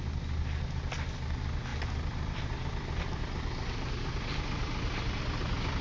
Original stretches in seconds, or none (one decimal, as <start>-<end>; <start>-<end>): 0.0-5.8

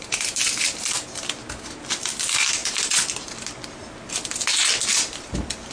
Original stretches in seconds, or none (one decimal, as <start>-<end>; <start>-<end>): 0.0-5.7

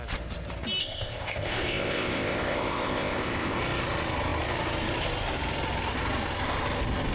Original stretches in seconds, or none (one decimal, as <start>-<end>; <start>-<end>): 0.0-0.8; 3.6-7.1

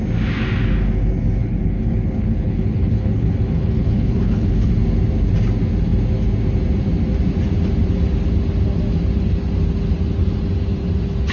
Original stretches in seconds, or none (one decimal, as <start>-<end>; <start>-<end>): 0.0-1.4; 4.7-11.3

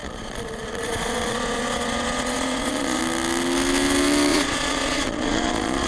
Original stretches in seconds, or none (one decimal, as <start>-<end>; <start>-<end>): 3.0-4.3